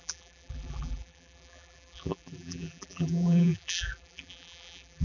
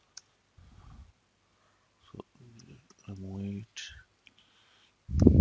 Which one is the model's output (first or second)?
first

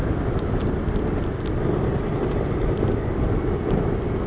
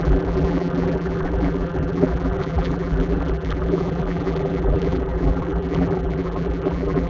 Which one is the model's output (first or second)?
second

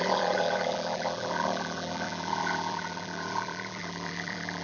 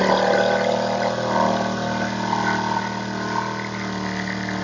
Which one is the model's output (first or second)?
first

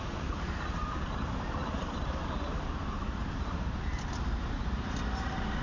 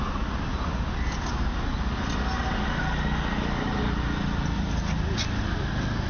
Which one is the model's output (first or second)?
first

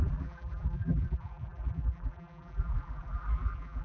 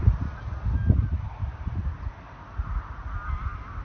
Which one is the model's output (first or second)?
first